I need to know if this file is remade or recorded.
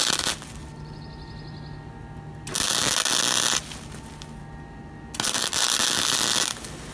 recorded